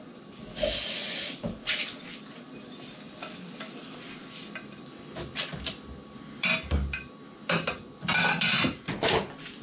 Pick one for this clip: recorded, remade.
recorded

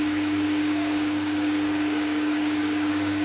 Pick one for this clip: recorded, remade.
remade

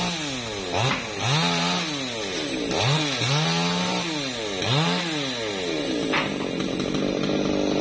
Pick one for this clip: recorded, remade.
recorded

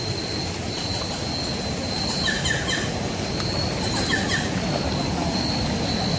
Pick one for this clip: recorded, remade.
recorded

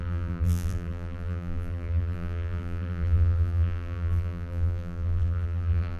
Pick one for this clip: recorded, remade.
remade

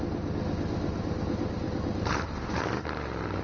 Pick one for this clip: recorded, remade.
remade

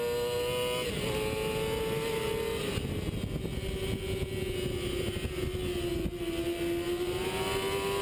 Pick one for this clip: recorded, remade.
recorded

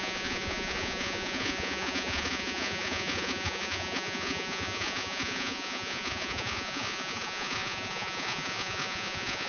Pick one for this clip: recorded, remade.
remade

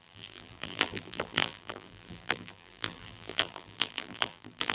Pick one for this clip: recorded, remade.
remade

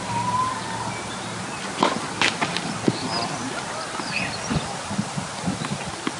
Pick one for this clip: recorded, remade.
recorded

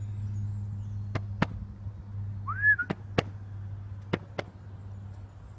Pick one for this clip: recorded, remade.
recorded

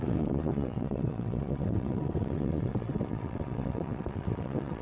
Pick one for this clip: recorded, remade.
remade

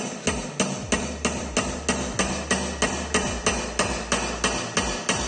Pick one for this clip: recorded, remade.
recorded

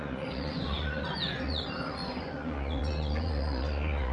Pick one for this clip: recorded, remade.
remade